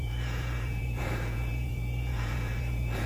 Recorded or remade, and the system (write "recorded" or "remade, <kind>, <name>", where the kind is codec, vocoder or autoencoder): remade, vocoder, Vocos